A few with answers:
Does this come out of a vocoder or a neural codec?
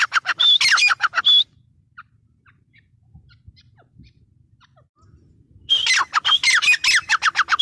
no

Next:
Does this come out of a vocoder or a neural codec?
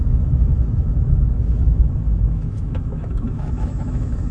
yes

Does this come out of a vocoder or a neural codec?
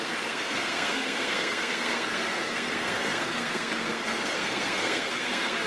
yes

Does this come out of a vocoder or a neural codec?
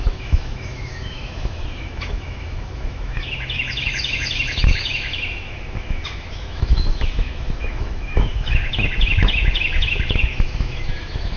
yes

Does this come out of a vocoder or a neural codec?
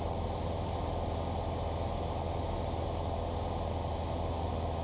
no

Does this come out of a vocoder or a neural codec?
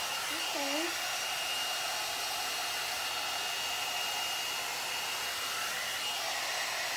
no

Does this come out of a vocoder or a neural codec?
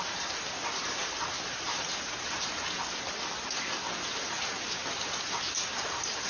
no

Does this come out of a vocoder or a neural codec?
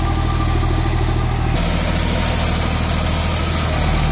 no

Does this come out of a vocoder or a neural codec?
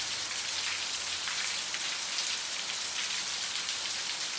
no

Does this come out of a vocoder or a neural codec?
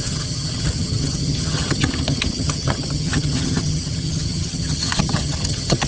yes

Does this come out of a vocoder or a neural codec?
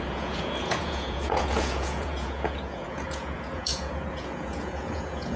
yes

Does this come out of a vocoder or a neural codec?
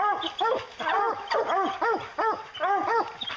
no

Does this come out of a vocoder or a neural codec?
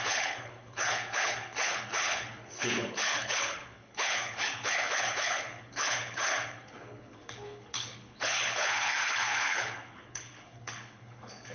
yes